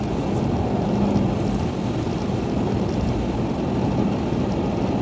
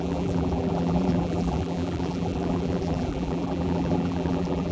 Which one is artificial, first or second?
second